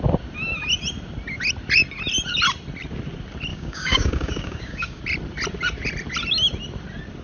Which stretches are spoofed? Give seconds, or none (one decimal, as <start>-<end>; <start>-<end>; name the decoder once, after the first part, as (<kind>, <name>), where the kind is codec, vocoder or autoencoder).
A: 3.5-5.0 (codec, DAC)